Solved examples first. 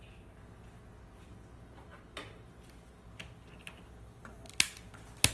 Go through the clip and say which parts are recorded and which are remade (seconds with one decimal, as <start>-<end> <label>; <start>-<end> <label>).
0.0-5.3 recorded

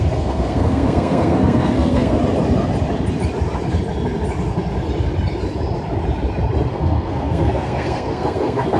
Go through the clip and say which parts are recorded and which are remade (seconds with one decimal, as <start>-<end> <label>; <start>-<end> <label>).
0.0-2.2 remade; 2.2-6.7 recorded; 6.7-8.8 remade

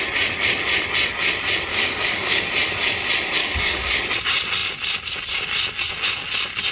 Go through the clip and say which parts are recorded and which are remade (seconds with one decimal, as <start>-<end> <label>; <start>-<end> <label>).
0.0-1.7 recorded; 1.7-2.4 remade; 2.4-3.4 recorded; 3.4-4.0 remade; 4.0-6.7 recorded

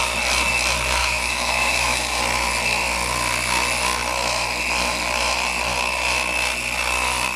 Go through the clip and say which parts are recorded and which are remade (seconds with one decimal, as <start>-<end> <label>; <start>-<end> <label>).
0.0-1.0 recorded; 1.0-2.2 remade; 2.2-7.4 recorded

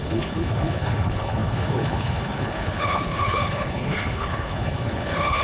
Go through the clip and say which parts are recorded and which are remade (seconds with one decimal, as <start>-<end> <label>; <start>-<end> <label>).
0.0-5.4 remade

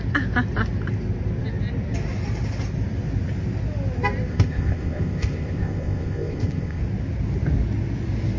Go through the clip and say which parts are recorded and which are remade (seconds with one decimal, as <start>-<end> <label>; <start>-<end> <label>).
0.0-4.3 recorded; 4.3-6.8 remade; 6.8-8.4 recorded